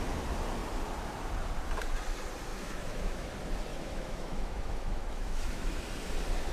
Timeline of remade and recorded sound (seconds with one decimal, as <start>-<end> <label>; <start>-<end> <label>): 0.0-2.5 recorded; 2.5-3.3 remade; 3.3-3.7 recorded; 3.7-5.8 remade; 5.8-6.5 recorded